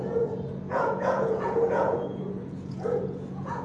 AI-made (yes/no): yes